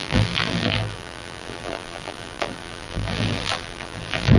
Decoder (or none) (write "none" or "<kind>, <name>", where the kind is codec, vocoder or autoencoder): vocoder, BigVGAN v2